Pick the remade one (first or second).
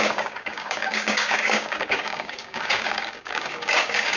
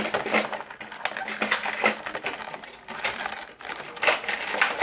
first